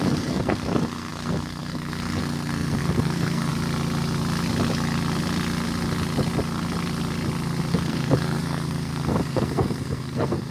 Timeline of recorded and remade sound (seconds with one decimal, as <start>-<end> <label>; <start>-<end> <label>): 0.0-3.5 remade; 3.5-7.7 recorded; 7.7-10.5 remade